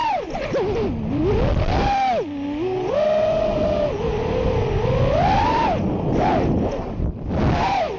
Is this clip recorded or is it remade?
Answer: recorded